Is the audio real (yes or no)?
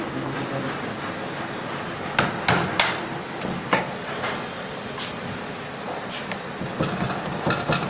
yes